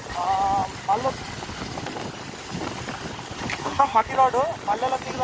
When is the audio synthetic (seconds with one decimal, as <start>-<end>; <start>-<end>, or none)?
3.6-4.1